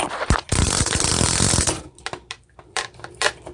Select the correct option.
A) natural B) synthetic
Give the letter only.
B